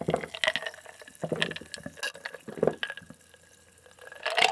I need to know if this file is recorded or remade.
recorded